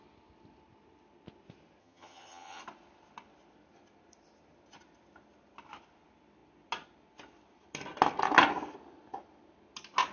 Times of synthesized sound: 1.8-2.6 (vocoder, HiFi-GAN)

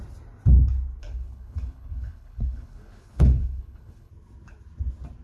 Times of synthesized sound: 1.0-4.1 (codec, HILCodec)

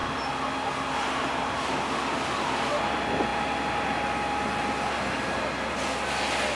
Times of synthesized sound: none

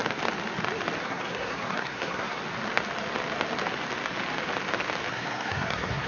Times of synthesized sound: 1.0-2.4 (codec, SNAC); 5.1-6.1

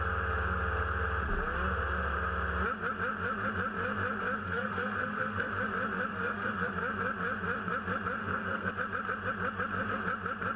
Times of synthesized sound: 4.4-5.5 (codec, SNAC); 6.1-6.7; 8.2-8.7

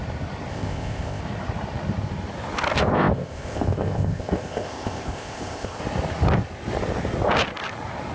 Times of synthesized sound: 0.5-1.2 (codec, ZipCodec); 2.9-5.8

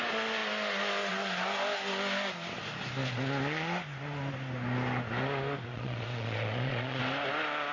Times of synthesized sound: 5.7-7.0 (vocoder, Vocos)

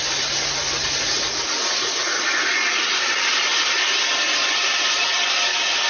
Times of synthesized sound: 1.6-2.2 (vocoder, Vocos)